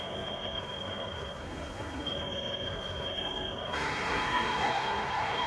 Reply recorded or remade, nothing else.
remade